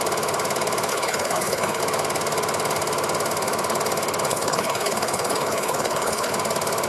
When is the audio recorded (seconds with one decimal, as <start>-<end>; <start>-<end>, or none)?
0.0-0.9; 1.8-4.3; 6.3-6.9